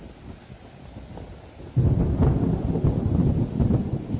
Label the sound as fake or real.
real